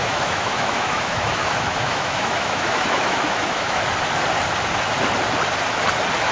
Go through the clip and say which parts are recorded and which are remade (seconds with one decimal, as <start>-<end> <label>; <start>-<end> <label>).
0.0-3.8 remade; 3.8-6.3 recorded